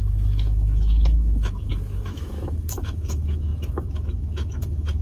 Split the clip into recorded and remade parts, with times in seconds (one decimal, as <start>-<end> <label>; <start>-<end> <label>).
0.0-5.0 remade